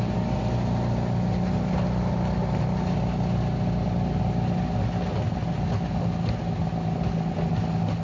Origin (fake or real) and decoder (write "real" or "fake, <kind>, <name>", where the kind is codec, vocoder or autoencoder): real